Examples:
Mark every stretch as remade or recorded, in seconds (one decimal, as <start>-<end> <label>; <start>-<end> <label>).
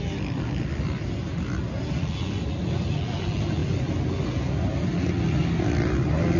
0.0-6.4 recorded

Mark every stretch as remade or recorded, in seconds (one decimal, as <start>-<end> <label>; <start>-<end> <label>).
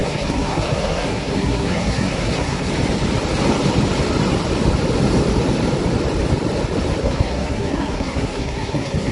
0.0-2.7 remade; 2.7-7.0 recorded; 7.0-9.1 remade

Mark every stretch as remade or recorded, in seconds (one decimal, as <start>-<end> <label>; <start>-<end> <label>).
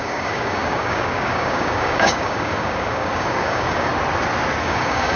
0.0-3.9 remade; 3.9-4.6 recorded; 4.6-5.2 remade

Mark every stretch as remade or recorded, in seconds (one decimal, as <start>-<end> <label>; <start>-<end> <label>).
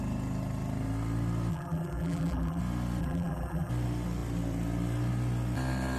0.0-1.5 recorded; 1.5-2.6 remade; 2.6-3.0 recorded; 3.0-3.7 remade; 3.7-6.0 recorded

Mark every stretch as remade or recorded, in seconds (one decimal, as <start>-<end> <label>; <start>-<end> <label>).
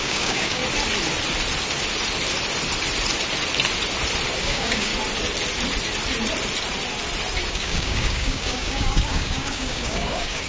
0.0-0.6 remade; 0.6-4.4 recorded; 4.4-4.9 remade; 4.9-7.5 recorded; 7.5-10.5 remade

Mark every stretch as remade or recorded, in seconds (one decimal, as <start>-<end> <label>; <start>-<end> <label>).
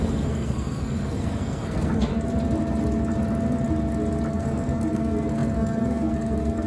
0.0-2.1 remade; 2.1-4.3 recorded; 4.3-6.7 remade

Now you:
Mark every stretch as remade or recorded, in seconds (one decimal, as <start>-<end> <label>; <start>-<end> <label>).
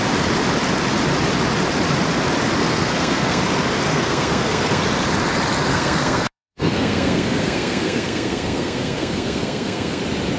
0.0-2.6 recorded; 2.6-3.4 remade; 3.4-3.9 recorded; 3.9-4.8 remade; 4.8-5.7 recorded; 5.7-10.0 remade; 10.0-10.4 recorded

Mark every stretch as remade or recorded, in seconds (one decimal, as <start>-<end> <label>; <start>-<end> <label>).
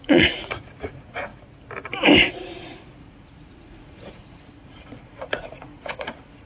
0.0-1.3 remade; 1.3-2.3 recorded; 2.3-6.5 remade